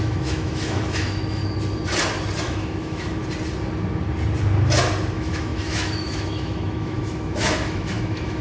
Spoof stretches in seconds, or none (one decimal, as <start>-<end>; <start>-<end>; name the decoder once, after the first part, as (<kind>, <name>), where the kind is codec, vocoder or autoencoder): 0.0-1.4 (autoencoder, DAC-VAE); 2.4-3.2; 5.1-8.4